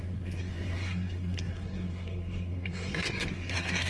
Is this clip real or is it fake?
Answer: fake